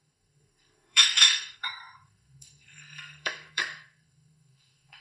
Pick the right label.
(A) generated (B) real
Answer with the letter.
A